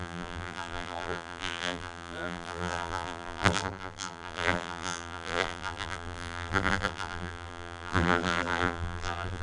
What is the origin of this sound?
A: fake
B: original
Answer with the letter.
A